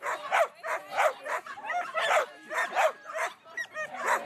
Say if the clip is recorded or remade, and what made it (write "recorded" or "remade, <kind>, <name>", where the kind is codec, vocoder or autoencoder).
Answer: remade, vocoder, BigVGAN v2